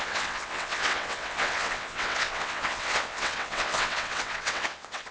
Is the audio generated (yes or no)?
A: yes